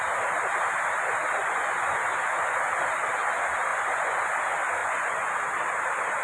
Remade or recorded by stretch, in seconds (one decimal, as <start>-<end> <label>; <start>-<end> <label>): 0.0-1.4 recorded; 1.4-2.6 remade; 2.6-3.7 recorded; 3.7-4.3 remade; 4.3-4.8 recorded; 4.8-5.3 remade; 5.3-6.2 recorded